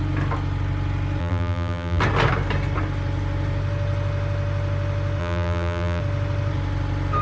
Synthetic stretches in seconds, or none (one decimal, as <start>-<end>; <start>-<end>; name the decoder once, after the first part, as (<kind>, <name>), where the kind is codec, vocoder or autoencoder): 1.2-2.0 (vocoder, BigVGAN v2); 5.2-6.0